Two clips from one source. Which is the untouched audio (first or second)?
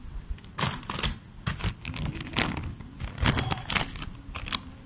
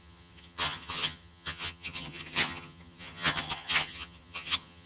first